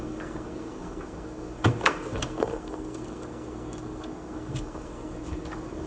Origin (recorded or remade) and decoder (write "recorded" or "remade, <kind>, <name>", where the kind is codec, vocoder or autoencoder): remade, codec, SNAC